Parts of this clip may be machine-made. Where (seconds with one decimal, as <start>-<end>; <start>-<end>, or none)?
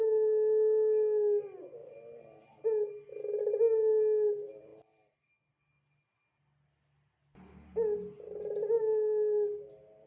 none